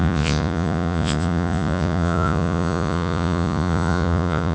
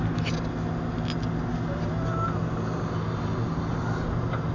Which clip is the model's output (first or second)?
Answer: first